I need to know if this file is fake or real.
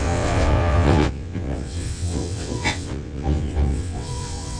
fake